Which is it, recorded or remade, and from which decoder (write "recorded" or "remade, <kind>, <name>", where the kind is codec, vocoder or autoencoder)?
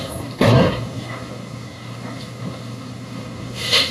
remade, codec, SNAC